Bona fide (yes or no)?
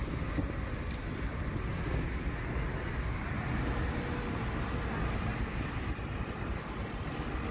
yes